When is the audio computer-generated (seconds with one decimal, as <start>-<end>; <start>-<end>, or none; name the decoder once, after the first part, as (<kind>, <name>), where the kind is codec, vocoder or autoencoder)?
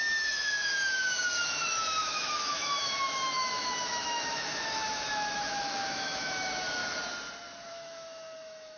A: 0.0-6.8 (autoencoder, DAC-VAE); 7.7-8.8